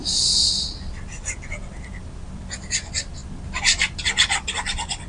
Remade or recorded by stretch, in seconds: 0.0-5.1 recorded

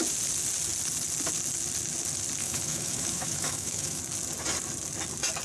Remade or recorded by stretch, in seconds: 0.0-2.4 recorded; 2.4-4.0 remade; 4.0-5.4 recorded

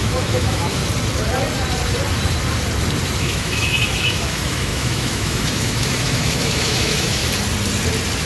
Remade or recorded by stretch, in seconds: 0.0-0.8 remade; 0.8-3.2 recorded; 3.2-7.2 remade; 7.2-8.2 recorded

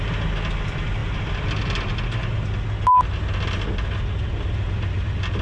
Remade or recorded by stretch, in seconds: 0.0-5.4 recorded

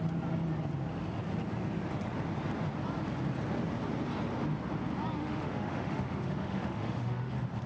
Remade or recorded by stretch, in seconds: 0.0-5.2 recorded; 5.2-7.3 remade; 7.3-7.7 recorded